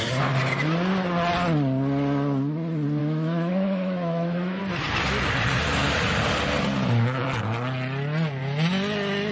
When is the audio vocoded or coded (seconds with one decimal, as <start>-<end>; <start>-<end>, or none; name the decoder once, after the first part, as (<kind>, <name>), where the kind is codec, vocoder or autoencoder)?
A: 3.0-4.6 (autoencoder, DAC-VAE)